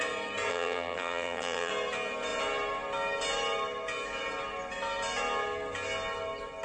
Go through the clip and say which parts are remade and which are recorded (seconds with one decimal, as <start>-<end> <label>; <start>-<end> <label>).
0.0-0.5 recorded; 0.5-1.7 remade; 1.7-6.6 recorded